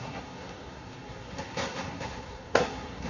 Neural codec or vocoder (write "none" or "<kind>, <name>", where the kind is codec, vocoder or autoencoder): codec, SNAC